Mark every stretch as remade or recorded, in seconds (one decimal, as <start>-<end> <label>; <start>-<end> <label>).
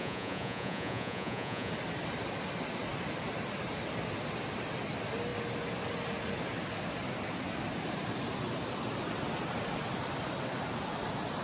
0.0-1.7 remade; 1.7-11.4 recorded